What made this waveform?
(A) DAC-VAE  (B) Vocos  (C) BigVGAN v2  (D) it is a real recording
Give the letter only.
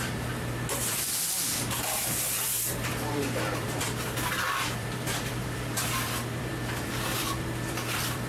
C